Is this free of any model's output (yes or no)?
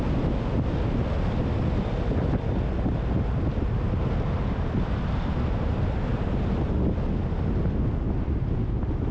yes